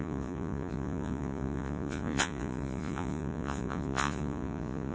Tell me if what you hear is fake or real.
fake